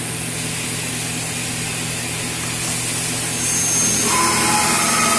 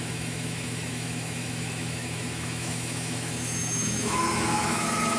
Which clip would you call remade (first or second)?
second